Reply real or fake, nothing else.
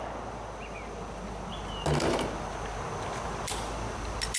real